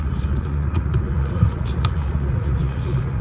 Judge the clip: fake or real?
fake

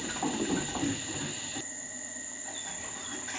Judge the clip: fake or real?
real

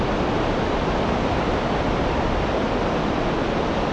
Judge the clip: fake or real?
real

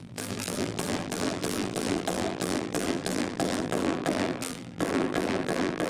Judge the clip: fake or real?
fake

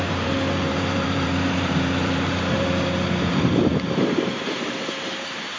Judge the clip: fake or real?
fake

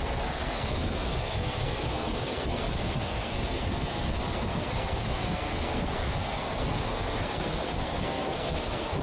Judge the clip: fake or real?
fake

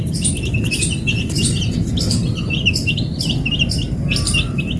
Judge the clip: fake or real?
real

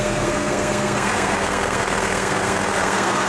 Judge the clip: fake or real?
fake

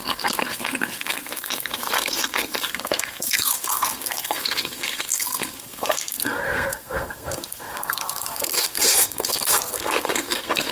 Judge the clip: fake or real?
fake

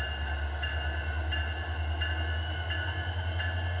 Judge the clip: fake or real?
real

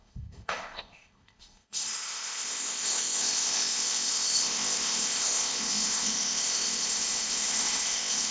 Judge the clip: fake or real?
fake